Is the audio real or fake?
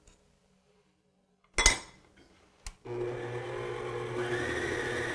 real